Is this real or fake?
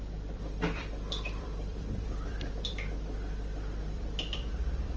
fake